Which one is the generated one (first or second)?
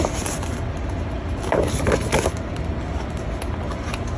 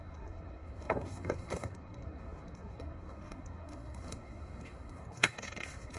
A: second